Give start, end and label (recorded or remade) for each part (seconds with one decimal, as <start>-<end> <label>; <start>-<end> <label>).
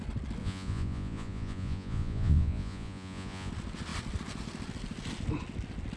0.0-0.4 recorded; 0.4-3.5 remade; 3.5-6.0 recorded